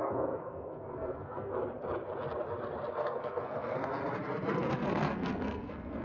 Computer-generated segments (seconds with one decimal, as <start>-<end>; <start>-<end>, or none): 0.0-1.5; 2.9-3.9; 4.5-6.0